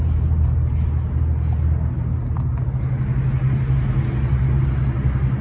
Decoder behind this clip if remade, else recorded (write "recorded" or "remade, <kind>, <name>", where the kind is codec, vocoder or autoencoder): recorded